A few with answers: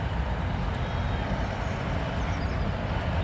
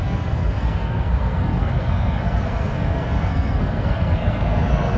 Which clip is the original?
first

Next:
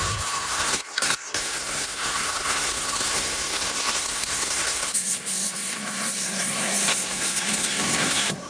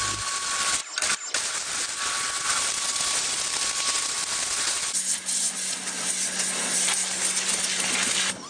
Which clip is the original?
second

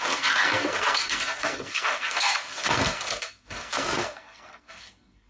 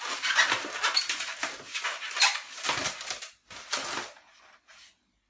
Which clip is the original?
second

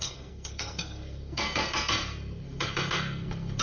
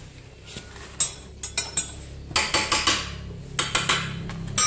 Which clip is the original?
second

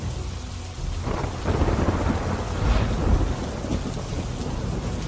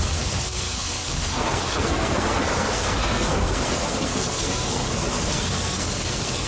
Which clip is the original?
first